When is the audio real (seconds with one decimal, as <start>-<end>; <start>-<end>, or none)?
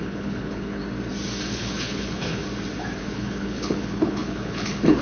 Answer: 0.8-1.5; 2.4-3.0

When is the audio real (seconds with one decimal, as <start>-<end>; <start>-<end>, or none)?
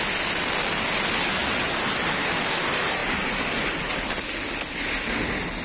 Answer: 0.0-5.6